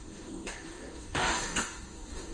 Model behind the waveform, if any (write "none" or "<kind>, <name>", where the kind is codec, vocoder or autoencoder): codec, DAC